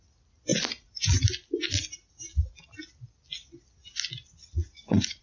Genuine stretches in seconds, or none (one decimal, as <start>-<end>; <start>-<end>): 0.0-4.3